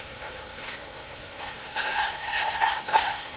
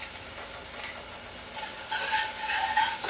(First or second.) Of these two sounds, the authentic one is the second